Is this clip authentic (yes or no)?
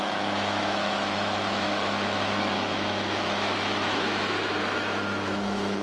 no